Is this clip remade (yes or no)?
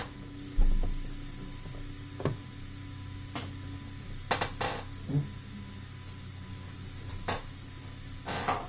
no